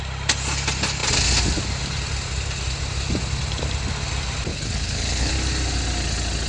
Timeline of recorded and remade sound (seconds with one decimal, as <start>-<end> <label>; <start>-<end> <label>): 0.0-4.5 recorded; 4.5-5.3 remade; 5.3-6.5 recorded